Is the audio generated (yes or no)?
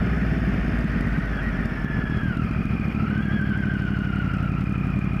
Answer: no